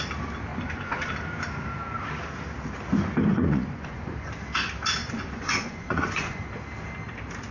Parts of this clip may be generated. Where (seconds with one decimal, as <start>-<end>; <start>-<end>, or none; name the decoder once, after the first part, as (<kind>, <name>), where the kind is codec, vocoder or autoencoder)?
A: 0.5-1.1 (vocoder, Vocos); 3.3-4.3; 5.0-6.5